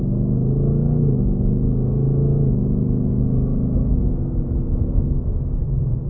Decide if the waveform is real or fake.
fake